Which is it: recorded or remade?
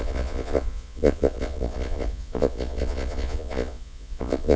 remade